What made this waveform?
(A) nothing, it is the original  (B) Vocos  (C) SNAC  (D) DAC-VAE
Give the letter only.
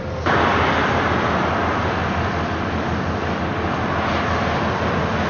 A